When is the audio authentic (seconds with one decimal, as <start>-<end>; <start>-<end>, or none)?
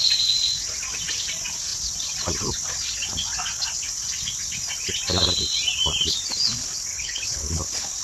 0.0-6.9; 7.6-8.0